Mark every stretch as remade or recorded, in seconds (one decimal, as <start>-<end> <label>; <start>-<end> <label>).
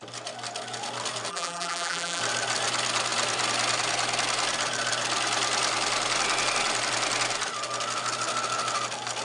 0.0-1.3 recorded; 1.3-2.2 remade; 2.2-9.2 recorded